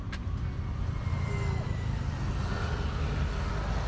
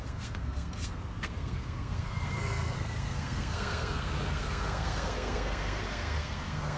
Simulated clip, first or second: second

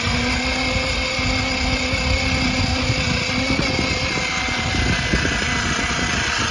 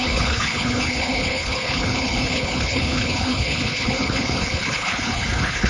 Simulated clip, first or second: second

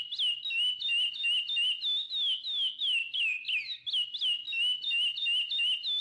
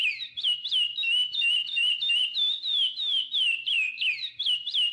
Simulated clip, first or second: second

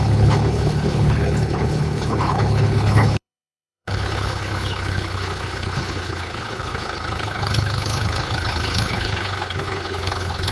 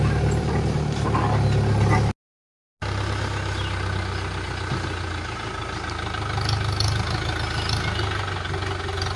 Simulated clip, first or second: first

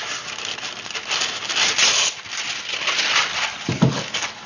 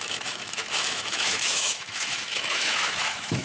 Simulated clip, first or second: second